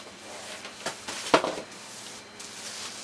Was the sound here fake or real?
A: real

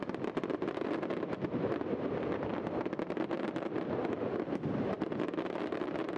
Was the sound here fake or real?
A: fake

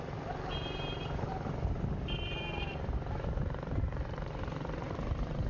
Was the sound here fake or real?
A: fake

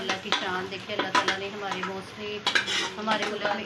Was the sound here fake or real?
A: real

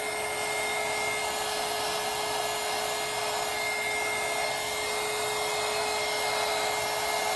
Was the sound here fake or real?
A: real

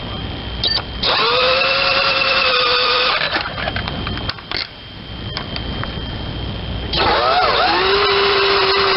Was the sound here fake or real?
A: fake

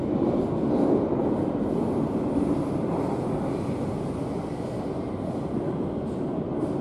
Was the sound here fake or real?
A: real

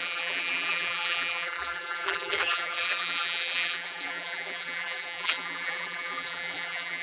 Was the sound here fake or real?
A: fake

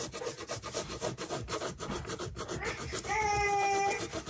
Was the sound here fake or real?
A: fake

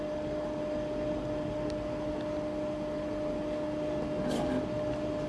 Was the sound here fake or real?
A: real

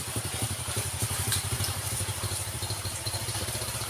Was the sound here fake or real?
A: fake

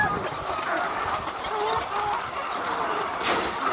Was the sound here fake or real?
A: fake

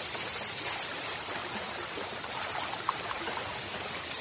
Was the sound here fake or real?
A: real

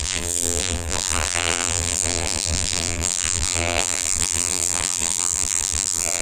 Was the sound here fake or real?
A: fake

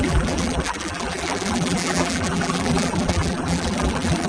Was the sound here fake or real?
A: fake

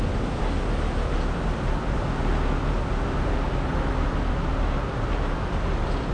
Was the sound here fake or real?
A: real